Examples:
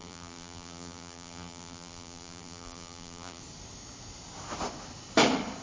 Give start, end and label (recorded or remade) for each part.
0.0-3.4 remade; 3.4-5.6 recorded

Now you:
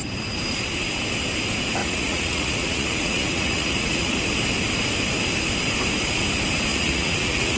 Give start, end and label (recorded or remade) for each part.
0.0-1.8 recorded; 1.8-4.2 remade; 4.2-6.7 recorded; 6.7-7.6 remade

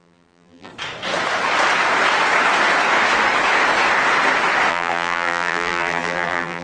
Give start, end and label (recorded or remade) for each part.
0.0-0.7 remade; 0.7-4.7 recorded; 4.7-6.6 remade

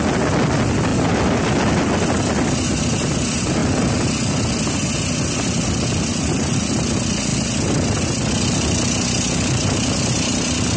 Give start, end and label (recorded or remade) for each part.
0.0-10.8 recorded

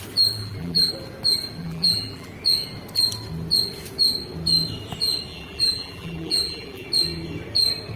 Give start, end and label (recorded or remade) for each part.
0.0-0.4 recorded; 0.4-0.9 remade; 0.9-1.6 recorded; 1.6-2.3 remade; 2.3-5.3 recorded; 5.3-6.9 remade; 6.9-8.0 recorded

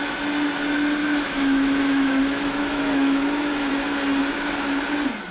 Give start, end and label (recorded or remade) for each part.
0.0-1.0 recorded; 1.0-3.7 remade; 3.7-4.2 recorded; 4.2-4.8 remade; 4.8-5.3 recorded

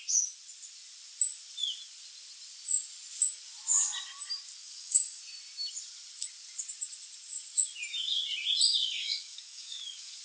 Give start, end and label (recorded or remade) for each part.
0.0-4.6 recorded; 4.6-5.2 remade; 5.2-8.8 recorded; 8.8-10.2 remade

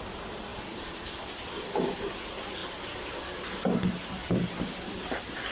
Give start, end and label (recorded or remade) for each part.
0.0-5.5 recorded